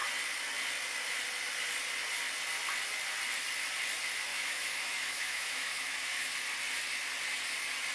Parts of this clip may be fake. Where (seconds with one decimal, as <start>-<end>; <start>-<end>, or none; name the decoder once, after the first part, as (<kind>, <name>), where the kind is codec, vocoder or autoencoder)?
4.3-6.3 (autoencoder, DAC-VAE)